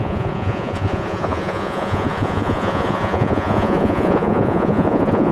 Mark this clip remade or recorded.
remade